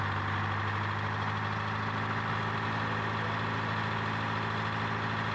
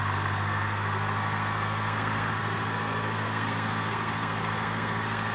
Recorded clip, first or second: first